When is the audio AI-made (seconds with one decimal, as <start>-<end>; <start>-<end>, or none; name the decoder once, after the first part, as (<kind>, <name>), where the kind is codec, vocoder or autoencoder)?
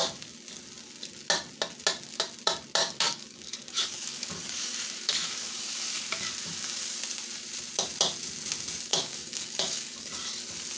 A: 2.8-6.3 (codec, DAC); 8.9-10.1